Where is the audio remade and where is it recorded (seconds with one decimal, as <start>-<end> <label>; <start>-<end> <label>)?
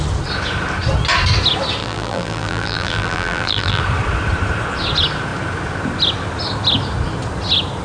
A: 0.0-1.8 recorded; 1.8-3.8 remade; 3.8-7.8 recorded